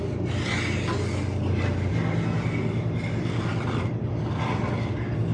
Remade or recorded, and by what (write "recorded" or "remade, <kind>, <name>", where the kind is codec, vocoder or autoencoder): recorded